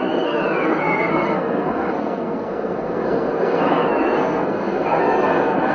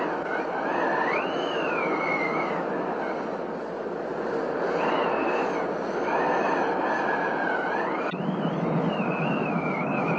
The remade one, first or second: first